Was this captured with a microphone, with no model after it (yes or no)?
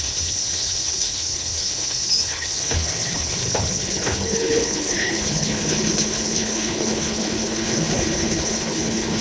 no